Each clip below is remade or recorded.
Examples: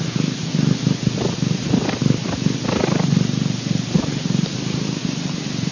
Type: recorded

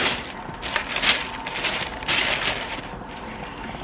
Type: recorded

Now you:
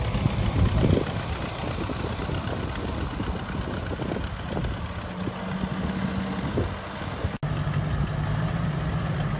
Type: recorded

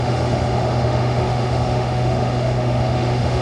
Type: remade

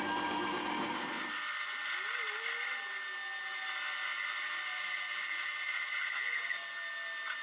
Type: recorded